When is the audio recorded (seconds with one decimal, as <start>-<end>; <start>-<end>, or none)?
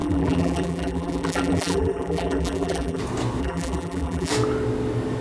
3.0-3.4; 4.3-5.2